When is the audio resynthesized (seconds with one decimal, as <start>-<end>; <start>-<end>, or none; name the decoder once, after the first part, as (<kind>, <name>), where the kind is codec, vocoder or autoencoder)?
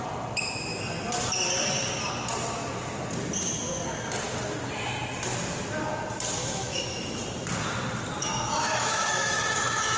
6.4-7.2 (autoencoder, DAC-VAE); 8.2-10.0